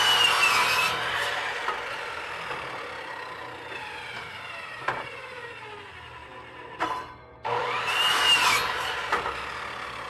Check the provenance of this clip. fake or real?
fake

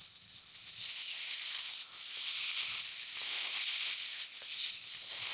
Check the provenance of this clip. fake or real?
fake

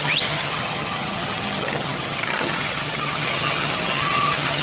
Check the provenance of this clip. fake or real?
fake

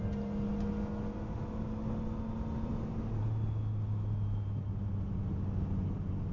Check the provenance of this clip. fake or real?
real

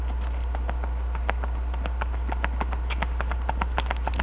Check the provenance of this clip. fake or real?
real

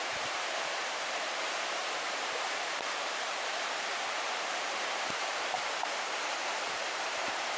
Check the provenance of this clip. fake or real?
fake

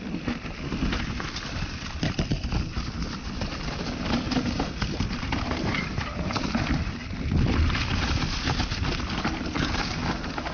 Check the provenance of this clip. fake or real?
real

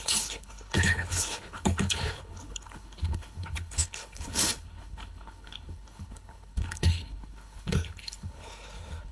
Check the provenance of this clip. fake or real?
fake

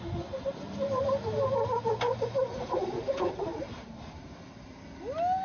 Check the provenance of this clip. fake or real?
real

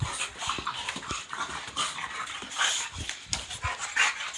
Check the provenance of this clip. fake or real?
real